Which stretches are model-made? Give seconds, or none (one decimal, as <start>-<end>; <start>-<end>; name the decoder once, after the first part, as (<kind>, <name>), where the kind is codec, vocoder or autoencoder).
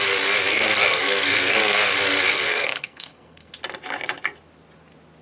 0.5-1.6 (codec, SNAC); 2.3-3.5